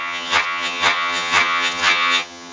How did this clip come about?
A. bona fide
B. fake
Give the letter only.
B